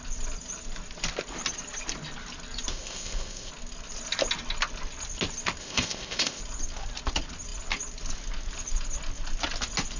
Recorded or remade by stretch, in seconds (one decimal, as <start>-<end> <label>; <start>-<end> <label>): 0.0-2.7 recorded; 2.7-3.5 remade; 3.5-5.6 recorded; 5.6-6.4 remade; 6.4-10.0 recorded